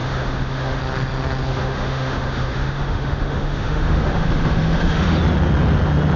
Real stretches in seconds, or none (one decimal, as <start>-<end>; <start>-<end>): 0.8-1.5; 5.2-6.2